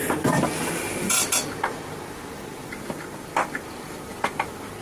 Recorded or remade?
recorded